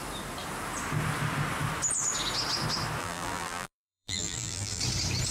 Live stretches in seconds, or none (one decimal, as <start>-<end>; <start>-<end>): 0.0-3.0; 4.8-5.3